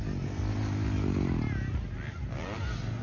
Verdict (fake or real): real